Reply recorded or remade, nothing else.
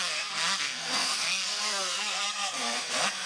remade